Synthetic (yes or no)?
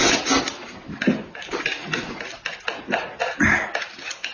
no